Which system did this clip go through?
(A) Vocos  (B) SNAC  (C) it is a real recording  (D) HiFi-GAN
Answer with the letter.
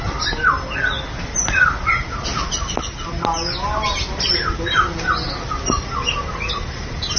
C